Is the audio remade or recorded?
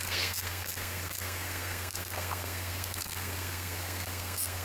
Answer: remade